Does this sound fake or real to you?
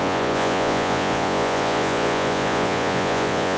fake